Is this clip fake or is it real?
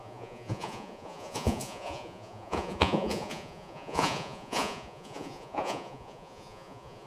fake